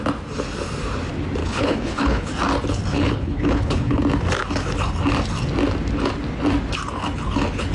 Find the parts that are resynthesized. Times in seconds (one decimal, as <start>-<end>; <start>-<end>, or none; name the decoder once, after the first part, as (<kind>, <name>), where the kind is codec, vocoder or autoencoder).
1.4-2.3 (codec, HILCodec); 2.9-4.0